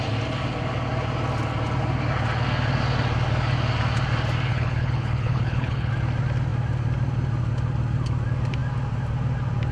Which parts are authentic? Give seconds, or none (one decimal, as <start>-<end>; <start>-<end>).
0.0-4.5; 5.9-9.7